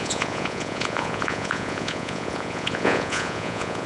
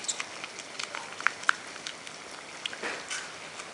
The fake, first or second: first